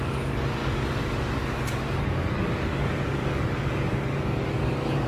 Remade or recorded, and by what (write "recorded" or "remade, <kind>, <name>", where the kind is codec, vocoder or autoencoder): remade, codec, DAC